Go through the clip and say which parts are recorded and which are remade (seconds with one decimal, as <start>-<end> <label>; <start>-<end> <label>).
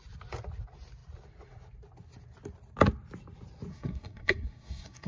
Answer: 0.0-3.7 recorded; 3.7-5.1 remade